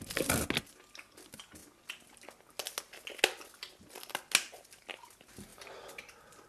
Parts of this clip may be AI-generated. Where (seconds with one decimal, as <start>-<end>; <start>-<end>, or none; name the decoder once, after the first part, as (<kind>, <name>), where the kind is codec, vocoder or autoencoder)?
none